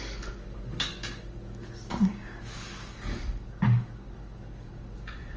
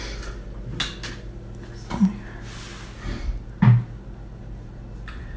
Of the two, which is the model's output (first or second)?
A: first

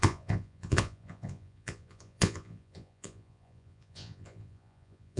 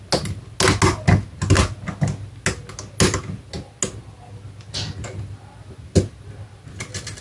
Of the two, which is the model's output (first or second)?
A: first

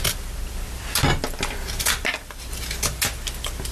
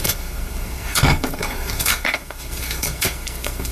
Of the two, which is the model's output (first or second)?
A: second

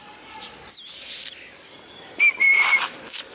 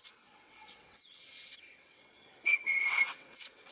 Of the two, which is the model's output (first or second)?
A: second